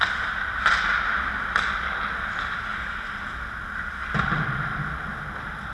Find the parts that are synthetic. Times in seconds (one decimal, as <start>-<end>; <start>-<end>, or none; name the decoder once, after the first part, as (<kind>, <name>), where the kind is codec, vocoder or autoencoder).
none